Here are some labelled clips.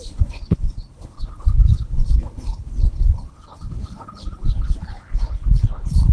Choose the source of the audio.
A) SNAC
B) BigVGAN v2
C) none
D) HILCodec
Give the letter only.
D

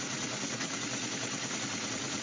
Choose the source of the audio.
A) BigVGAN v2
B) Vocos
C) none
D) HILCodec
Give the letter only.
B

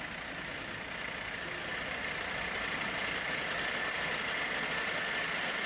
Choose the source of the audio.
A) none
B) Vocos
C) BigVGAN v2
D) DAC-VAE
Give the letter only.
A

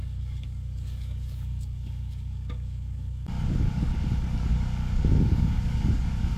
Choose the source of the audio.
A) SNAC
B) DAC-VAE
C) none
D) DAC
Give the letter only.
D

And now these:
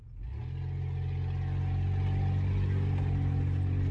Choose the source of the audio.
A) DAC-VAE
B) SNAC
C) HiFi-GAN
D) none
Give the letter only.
D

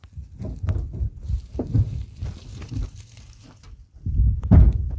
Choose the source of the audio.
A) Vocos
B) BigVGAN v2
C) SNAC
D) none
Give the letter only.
B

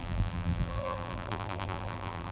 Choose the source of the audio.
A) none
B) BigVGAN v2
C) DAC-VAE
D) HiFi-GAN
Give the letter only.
B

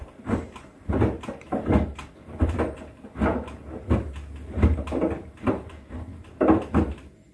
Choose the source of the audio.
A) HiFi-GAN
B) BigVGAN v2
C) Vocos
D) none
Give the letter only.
D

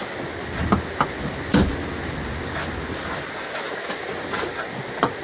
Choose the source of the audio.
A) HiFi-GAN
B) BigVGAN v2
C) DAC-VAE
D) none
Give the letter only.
D